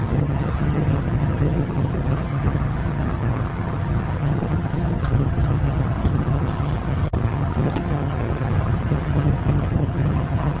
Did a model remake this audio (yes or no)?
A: yes